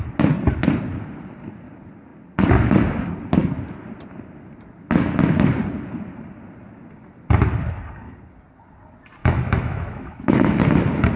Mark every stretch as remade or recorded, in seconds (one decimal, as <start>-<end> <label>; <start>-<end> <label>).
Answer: 0.0-9.2 recorded; 9.2-10.6 remade; 10.6-11.2 recorded